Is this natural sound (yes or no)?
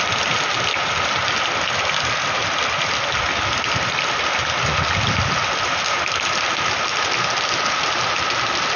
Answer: yes